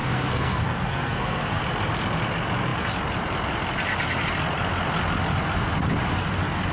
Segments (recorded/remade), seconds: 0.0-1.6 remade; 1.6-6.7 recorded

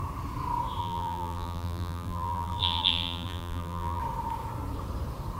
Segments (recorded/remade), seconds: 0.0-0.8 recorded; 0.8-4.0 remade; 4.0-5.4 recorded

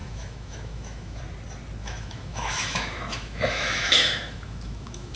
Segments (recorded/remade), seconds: 0.0-1.2 remade; 1.2-1.8 recorded; 1.8-5.2 remade

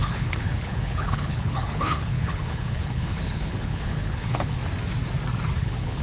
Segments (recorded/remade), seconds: 0.0-4.6 remade; 4.6-5.6 recorded; 5.6-6.0 remade

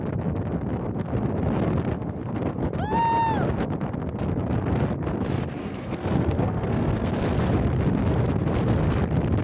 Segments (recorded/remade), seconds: 0.0-5.6 recorded; 5.6-7.1 remade; 7.1-9.4 recorded

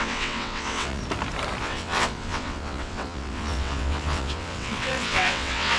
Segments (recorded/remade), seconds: 0.0-1.0 remade; 1.0-1.6 recorded; 1.6-5.8 remade

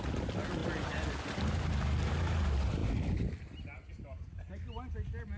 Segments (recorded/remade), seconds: 0.0-5.4 recorded

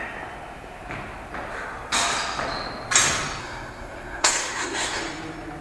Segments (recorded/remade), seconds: 0.0-3.4 recorded; 3.4-5.0 remade; 5.0-5.6 recorded